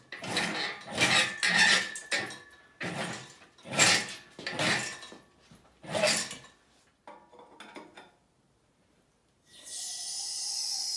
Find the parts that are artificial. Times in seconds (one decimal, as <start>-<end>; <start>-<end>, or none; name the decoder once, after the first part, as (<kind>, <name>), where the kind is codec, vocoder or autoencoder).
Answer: none

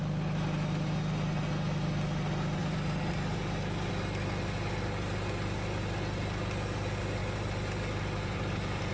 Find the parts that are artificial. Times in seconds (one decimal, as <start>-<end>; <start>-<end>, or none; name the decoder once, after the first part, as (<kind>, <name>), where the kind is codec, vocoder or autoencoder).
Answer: 2.6-3.9 (vocoder, BigVGAN v2); 7.2-8.9

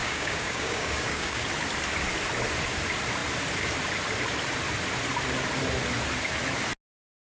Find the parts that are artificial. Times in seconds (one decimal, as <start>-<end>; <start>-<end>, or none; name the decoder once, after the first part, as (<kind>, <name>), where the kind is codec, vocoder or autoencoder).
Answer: 0.0-1.5 (codec, DAC)

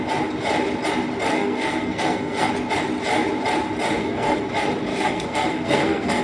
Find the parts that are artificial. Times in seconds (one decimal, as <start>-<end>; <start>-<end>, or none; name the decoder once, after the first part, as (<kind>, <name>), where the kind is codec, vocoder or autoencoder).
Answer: 1.3-2.5 (codec, SNAC); 4.0-4.5; 4.9-6.2

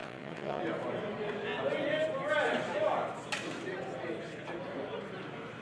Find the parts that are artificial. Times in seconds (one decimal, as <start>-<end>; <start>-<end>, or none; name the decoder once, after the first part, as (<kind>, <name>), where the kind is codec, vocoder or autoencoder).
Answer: 0.0-0.6 (vocoder, WaveNeXt)

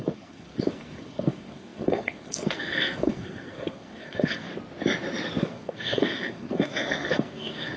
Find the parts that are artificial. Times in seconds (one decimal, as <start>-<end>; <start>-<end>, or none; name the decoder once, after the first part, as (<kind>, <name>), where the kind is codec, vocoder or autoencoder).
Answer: 0.0-4.5 (codec, SNAC); 5.4-7.8

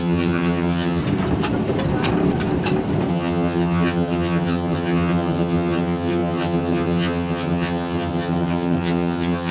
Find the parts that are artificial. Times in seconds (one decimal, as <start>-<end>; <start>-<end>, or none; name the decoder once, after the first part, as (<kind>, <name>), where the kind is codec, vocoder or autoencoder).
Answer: 0.0-1.0 (vocoder, HiFi-GAN); 3.1-9.5

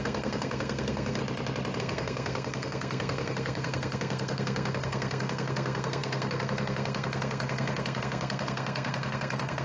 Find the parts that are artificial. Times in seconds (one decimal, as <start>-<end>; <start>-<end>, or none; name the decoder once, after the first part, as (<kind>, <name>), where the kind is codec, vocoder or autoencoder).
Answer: 0.0-1.2 (codec, SNAC); 1.8-9.6